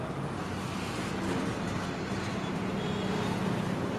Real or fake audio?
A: real